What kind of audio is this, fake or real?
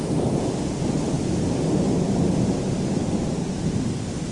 real